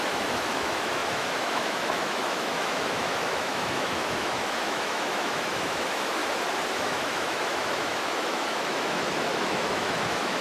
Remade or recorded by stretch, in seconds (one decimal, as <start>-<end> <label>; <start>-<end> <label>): 0.0-6.2 remade; 6.2-6.7 recorded; 6.7-10.4 remade